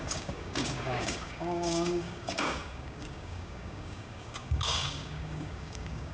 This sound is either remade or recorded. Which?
remade